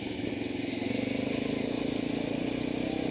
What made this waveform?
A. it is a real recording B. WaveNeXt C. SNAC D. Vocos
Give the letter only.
A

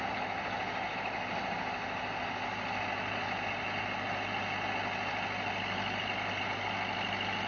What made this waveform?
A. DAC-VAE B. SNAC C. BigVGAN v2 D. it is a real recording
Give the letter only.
D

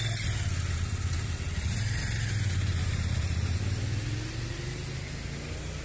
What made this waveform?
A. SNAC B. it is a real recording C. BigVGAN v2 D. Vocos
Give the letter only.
B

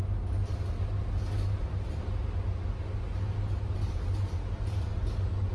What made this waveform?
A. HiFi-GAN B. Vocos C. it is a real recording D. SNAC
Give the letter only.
C